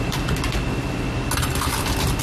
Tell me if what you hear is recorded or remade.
recorded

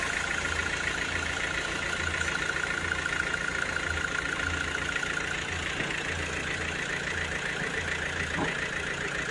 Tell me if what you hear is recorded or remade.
recorded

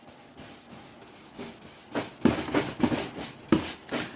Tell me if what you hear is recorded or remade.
recorded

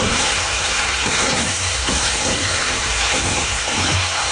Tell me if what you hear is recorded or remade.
remade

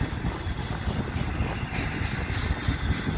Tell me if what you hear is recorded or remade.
recorded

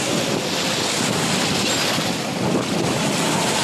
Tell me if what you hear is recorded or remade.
recorded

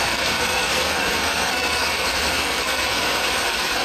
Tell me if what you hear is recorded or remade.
remade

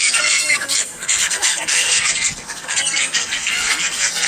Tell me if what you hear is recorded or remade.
remade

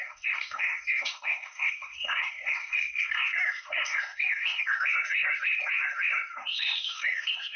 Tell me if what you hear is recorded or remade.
remade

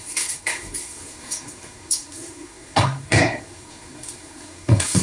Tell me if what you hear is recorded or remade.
remade